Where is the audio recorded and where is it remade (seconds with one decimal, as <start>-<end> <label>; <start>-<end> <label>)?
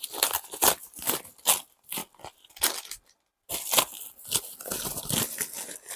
0.0-6.0 recorded